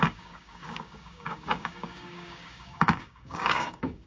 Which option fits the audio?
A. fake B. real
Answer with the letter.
A